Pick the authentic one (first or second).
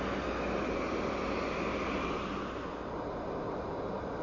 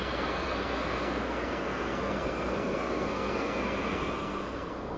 first